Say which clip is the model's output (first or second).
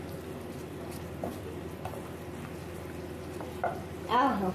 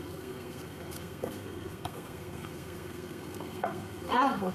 second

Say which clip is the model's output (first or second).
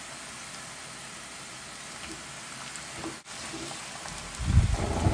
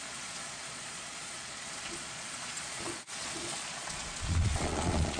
second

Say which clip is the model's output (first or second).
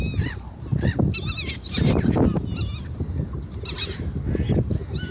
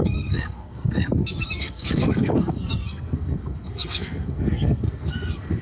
second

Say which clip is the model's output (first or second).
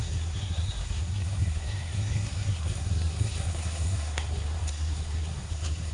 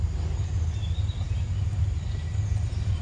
first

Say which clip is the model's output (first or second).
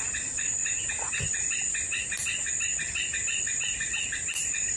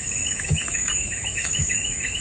second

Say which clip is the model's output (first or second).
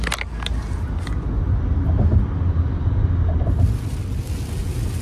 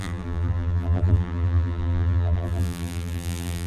second